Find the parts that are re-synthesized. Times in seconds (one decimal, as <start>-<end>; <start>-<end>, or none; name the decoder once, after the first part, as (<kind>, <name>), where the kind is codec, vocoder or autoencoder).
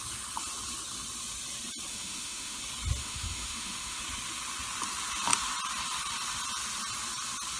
1.9-2.6 (autoencoder, DAC-VAE); 3.0-4.0